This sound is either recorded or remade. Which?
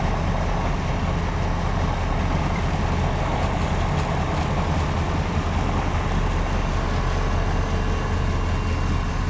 recorded